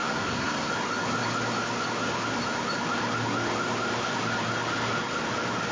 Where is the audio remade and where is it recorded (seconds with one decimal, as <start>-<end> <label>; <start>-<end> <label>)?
0.0-0.7 remade; 0.7-5.7 recorded